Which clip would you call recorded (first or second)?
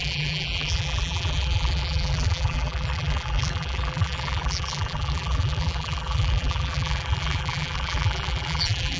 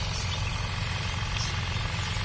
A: second